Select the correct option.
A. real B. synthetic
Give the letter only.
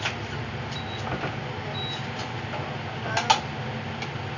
A